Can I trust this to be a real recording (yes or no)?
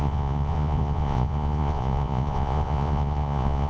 no